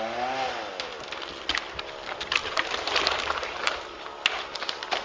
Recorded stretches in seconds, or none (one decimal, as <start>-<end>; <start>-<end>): 0.0-2.4; 4.1-5.0